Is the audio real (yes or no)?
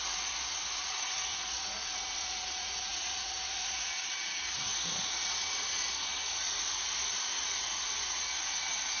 no